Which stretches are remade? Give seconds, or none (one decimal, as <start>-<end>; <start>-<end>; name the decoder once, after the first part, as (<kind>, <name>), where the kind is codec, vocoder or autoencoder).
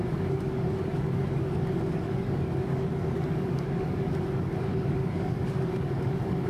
0.0-6.5 (codec, DAC)